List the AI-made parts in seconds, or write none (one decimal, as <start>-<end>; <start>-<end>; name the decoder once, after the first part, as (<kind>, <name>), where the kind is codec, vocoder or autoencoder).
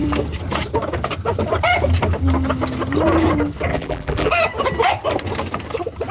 3.7-4.3 (vocoder, BigVGAN v2)